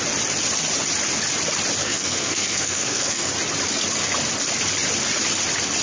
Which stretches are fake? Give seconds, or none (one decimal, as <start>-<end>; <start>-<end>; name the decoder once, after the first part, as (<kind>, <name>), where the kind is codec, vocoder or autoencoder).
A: 1.8-3.3 (codec, SNAC)